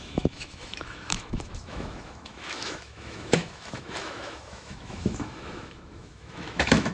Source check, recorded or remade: remade